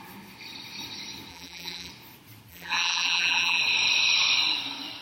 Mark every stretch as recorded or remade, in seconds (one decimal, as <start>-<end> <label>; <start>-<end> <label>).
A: 0.0-1.3 recorded; 1.3-1.9 remade; 1.9-2.5 recorded; 2.5-3.6 remade; 3.6-5.0 recorded